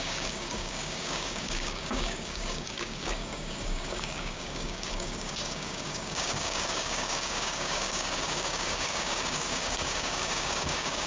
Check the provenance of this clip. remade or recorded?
remade